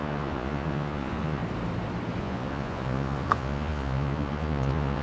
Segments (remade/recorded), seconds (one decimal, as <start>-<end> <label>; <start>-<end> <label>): 0.0-1.4 remade; 1.4-2.2 recorded; 2.2-5.0 remade